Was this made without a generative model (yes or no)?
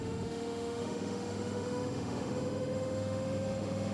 no